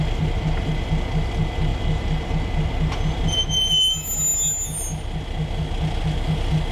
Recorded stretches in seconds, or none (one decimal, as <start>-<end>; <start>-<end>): 0.0-6.7